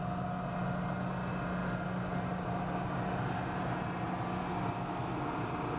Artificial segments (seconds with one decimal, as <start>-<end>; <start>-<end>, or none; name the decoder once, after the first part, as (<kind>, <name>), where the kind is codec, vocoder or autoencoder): none